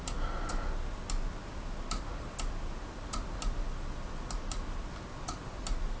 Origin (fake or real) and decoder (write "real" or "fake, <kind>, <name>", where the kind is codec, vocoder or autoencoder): real